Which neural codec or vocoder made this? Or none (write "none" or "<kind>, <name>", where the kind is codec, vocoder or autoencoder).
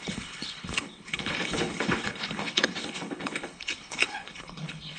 codec, HILCodec